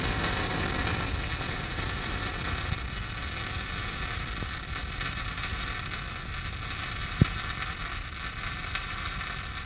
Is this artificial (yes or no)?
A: no